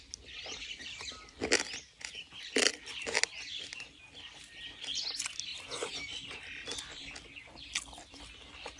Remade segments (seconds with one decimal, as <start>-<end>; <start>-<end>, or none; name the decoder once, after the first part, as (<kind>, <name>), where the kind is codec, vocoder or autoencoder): none

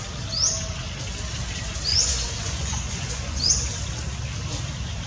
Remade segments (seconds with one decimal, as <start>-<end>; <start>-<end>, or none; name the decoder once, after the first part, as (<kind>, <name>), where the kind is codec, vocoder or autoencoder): 1.9-3.5 (vocoder, Vocos)

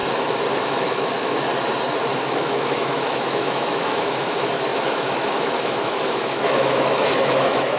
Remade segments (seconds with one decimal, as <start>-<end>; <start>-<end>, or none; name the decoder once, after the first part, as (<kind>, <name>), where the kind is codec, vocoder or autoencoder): 0.6-1.5 (autoencoder, DAC-VAE); 2.2-7.8

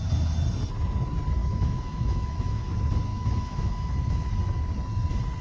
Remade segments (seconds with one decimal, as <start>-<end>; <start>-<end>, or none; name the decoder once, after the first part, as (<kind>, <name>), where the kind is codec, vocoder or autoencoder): 1.4-2.6 (autoencoder, DAC-VAE); 3.1-4.3

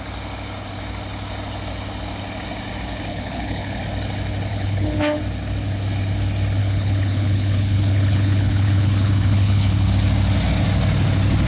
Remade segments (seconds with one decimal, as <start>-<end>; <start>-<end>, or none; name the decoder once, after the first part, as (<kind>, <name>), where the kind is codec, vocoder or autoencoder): 3.1-3.8 (codec, HILCodec); 4.5-5.2; 6.6-9.9

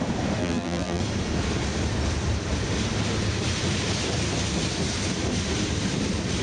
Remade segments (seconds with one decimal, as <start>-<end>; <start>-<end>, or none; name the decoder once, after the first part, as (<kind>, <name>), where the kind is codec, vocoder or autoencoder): 0.4-1.0 (vocoder, BigVGAN v2)

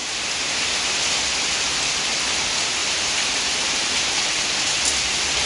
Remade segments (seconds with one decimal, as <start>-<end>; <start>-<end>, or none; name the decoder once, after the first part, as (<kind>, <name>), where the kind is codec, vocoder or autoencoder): 2.8-4.4 (vocoder, BigVGAN v2)